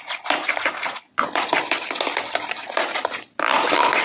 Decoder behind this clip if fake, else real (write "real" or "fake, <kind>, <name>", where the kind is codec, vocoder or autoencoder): real